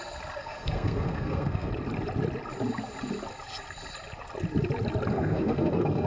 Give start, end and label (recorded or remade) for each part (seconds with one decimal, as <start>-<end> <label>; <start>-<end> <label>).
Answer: 0.0-0.4 recorded; 0.4-1.7 remade; 1.7-5.1 recorded; 5.1-6.1 remade